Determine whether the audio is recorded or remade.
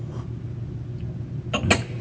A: recorded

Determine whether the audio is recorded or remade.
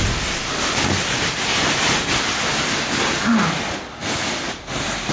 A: recorded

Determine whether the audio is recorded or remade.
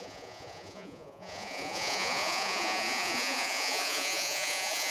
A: remade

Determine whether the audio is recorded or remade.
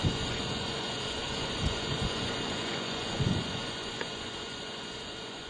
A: remade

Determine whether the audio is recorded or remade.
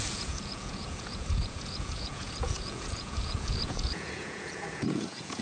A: remade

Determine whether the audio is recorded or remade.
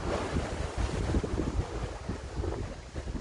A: recorded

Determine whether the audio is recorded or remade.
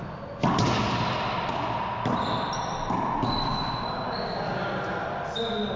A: recorded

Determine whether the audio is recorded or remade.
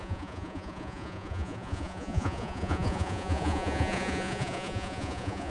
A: remade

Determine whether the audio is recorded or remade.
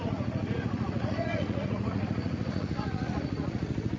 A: remade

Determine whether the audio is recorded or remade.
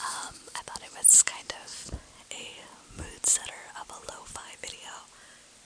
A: recorded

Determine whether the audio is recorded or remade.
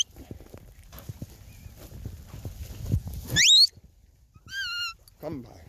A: recorded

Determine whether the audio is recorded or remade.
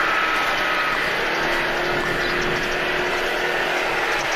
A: recorded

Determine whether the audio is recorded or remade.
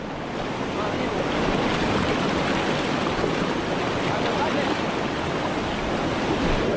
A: recorded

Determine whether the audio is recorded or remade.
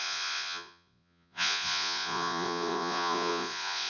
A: remade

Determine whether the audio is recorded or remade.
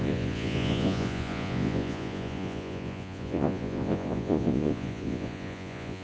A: remade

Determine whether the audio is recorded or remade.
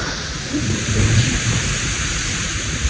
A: remade